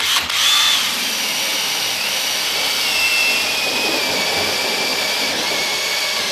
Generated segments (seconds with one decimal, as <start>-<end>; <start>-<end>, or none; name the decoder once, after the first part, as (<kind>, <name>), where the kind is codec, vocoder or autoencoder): 4.9-5.8 (vocoder, BigVGAN v2)